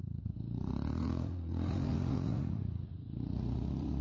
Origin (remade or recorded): remade